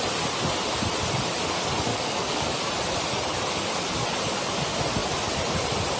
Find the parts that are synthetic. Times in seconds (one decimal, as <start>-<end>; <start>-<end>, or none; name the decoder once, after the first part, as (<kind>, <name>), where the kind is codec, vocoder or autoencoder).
1.9-2.6 (codec, DAC)